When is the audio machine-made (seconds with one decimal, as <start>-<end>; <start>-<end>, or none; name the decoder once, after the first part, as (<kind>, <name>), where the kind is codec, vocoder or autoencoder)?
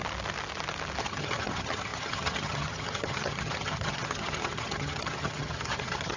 1.0-6.2 (vocoder, HiFi-GAN)